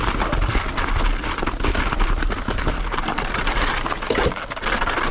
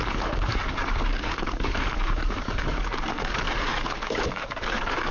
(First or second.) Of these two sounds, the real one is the first